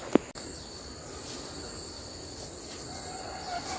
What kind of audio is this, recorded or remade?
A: recorded